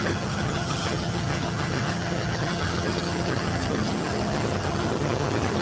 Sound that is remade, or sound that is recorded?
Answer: remade